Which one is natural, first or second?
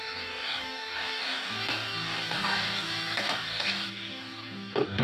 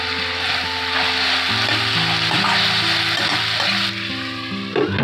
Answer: second